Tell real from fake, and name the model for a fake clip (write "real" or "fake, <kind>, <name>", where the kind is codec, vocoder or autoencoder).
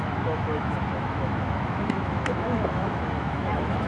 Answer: fake, autoencoder, DAC-VAE